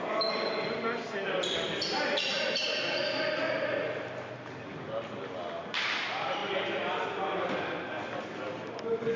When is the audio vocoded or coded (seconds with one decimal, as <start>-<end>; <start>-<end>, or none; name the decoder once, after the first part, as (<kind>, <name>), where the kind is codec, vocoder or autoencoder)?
none